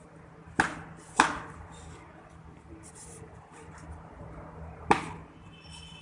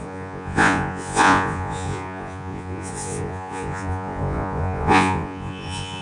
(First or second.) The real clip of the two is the first